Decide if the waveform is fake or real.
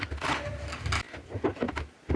real